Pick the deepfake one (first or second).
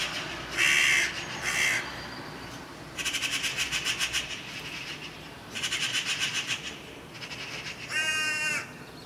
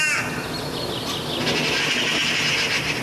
first